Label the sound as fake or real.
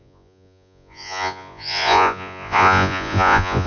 fake